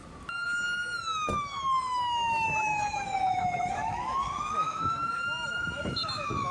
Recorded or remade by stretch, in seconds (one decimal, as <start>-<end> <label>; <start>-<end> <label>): 0.0-1.0 recorded; 1.0-6.5 remade